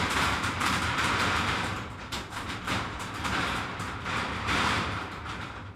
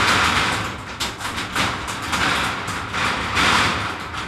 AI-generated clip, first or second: first